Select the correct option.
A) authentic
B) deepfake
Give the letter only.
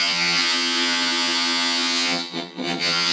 B